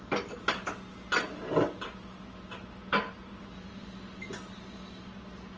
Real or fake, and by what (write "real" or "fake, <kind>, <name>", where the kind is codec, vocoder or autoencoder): real